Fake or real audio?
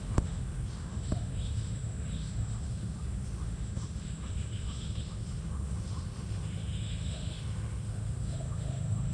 fake